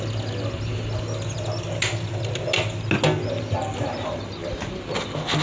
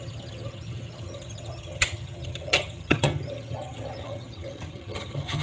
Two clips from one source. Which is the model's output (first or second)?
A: second